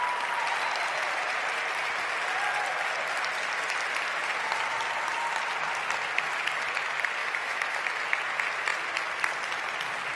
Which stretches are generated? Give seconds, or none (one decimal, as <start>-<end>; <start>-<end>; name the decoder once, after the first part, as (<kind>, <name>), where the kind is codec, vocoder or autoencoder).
7.2-7.8 (autoencoder, DAC-VAE)